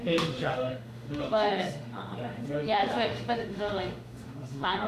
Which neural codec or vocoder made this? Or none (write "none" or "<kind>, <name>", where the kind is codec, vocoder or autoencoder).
autoencoder, DAC-VAE